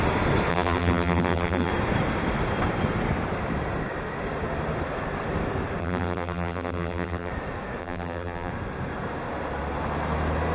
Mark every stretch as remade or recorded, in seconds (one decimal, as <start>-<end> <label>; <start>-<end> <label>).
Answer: 0.0-0.5 recorded; 0.5-1.7 remade; 1.7-5.8 recorded; 5.8-7.3 remade; 7.3-7.8 recorded; 7.8-8.5 remade; 8.5-10.5 recorded